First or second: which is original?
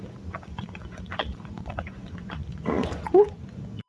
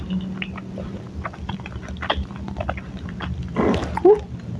second